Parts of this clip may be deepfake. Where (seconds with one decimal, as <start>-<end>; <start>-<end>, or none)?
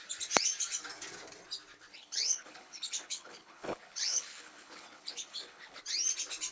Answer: 1.9-5.8